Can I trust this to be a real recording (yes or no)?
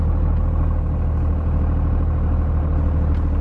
yes